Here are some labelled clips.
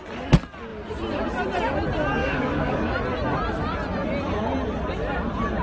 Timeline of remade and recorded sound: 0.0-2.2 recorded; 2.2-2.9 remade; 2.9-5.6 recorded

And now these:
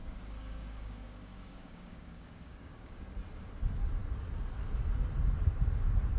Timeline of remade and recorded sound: 0.0-3.0 remade; 3.0-6.2 recorded

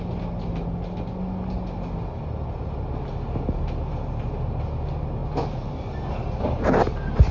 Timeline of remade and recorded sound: 0.0-7.3 recorded